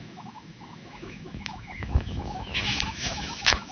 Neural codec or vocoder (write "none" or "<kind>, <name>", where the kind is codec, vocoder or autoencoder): autoencoder, DAC-VAE